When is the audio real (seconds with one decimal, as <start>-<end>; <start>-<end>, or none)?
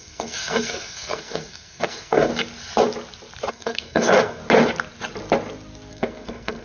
2.3-3.5; 4.4-5.9